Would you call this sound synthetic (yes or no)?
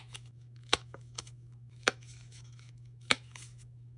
yes